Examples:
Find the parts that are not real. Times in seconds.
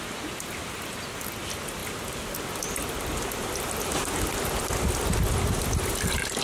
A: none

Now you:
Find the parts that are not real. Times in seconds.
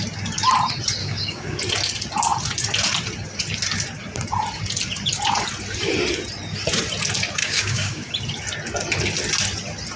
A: 1.0-1.6 (codec, DAC); 7.4-8.1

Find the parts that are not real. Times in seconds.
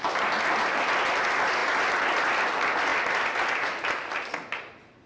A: none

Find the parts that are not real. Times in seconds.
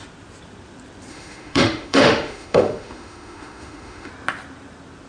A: 1.1-4.1 (autoencoder, DAC-VAE)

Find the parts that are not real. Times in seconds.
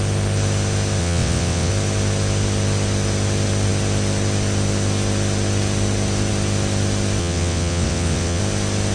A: 1.0-1.7 (vocoder, WaveNeXt); 7.2-8.4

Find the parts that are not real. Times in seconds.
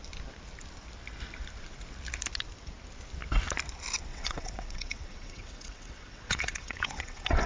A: 4.1-7.5 (vocoder, WaveNeXt)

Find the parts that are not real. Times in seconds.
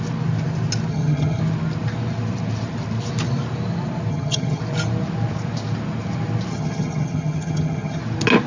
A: 0.9-1.4 (vocoder, HiFi-GAN); 4.1-4.6; 6.5-8.0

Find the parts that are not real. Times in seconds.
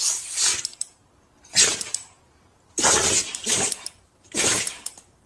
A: 0.5-1.1 (vocoder, BigVGAN v2); 1.7-5.3